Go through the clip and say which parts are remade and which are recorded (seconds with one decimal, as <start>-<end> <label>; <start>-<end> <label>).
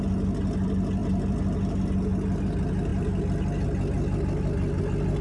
0.0-5.2 recorded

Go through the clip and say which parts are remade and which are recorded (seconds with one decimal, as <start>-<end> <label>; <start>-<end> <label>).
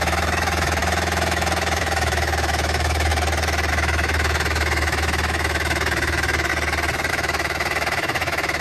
0.0-3.1 remade; 3.1-3.7 recorded; 3.7-6.5 remade; 6.5-7.1 recorded; 7.1-8.6 remade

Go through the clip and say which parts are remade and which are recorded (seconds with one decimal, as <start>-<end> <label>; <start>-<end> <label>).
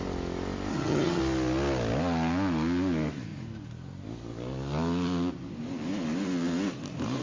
0.0-0.7 recorded; 0.7-1.2 remade; 1.2-7.2 recorded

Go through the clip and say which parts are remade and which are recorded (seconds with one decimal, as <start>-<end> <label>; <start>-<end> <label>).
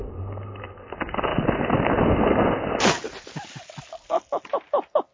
0.0-5.1 recorded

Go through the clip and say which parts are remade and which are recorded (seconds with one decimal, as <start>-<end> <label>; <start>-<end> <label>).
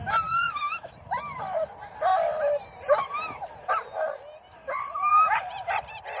0.0-5.1 recorded; 5.1-6.2 remade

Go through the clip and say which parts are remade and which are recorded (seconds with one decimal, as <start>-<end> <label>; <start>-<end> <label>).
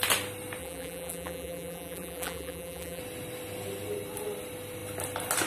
0.0-0.6 recorded; 0.6-3.0 remade; 3.0-5.5 recorded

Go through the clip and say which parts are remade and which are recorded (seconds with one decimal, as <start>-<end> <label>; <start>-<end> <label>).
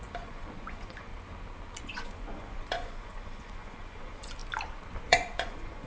0.0-1.1 remade; 1.1-1.8 recorded; 1.8-4.4 remade; 4.4-5.1 recorded; 5.1-5.9 remade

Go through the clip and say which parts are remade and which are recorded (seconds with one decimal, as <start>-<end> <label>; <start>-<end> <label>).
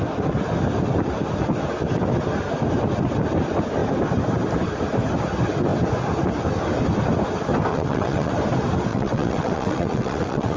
0.0-7.7 recorded; 7.7-8.3 remade; 8.3-8.9 recorded; 8.9-10.6 remade